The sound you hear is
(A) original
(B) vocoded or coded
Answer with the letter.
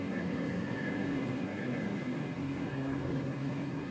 B